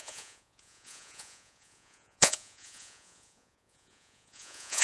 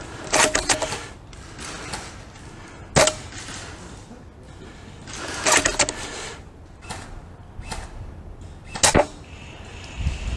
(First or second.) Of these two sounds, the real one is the second